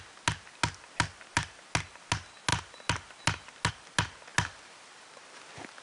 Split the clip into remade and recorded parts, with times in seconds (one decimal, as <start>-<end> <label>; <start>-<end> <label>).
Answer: 0.0-5.8 recorded